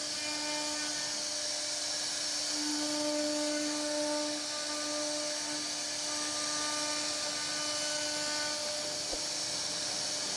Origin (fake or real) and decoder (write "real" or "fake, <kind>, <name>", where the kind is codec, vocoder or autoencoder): real